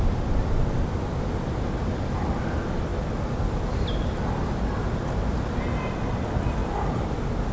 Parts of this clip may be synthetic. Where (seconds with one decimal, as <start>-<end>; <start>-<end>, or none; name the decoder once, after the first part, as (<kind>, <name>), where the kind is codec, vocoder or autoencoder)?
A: 6.6-7.1 (vocoder, BigVGAN v2)